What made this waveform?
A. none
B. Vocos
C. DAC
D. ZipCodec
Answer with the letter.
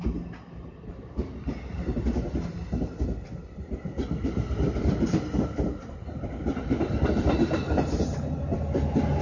A